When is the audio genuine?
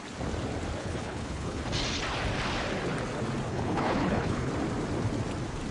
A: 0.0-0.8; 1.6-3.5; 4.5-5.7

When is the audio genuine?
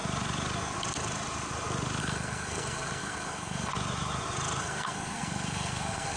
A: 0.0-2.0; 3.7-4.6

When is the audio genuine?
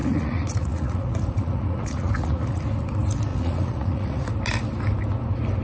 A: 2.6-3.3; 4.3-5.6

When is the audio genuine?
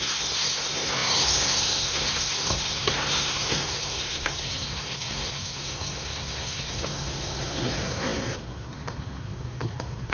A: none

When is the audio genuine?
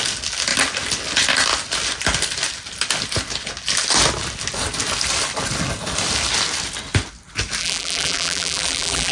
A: 0.0-7.6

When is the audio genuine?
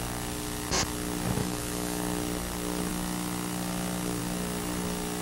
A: 0.0-1.4; 2.0-5.2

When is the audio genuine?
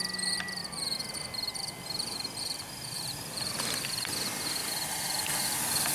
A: 0.0-0.6; 4.1-4.6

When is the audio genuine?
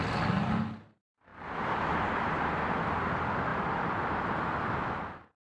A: 0.0-1.3; 2.3-3.5; 4.4-5.5